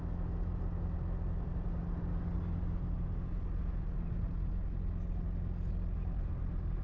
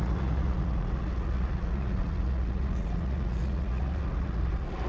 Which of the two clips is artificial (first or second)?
second